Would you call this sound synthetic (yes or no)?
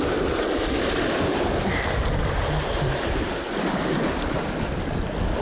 no